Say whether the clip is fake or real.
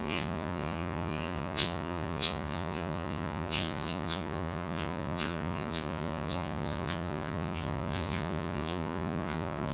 fake